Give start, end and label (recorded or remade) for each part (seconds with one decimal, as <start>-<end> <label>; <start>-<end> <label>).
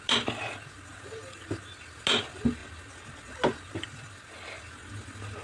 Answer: 0.0-5.4 recorded